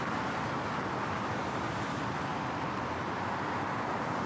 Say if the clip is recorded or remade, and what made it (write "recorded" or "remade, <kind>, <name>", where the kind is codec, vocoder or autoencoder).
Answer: recorded